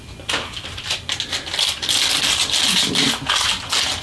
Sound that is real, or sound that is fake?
real